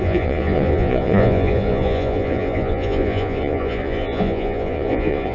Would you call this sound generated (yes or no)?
yes